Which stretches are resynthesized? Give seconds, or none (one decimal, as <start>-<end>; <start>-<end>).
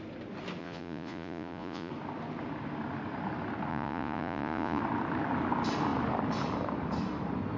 0.6-1.9; 3.7-4.8